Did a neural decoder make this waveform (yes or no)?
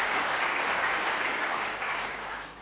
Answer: yes